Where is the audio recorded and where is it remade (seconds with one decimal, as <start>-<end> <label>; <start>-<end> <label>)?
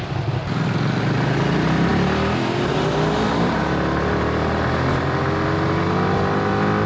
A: 0.0-1.9 recorded; 1.9-3.5 remade; 3.5-6.9 recorded